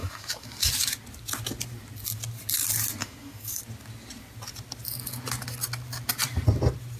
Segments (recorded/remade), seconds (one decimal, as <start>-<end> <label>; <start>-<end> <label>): 0.0-0.7 remade; 0.7-3.0 recorded; 3.0-3.6 remade; 3.6-7.0 recorded